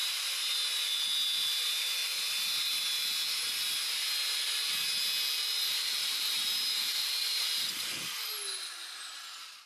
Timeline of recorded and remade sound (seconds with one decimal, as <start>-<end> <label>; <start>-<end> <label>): 0.0-5.4 recorded; 5.4-7.9 remade; 7.9-9.7 recorded